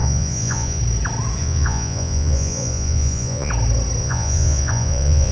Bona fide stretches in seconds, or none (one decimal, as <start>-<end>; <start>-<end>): 0.8-1.4; 3.5-4.0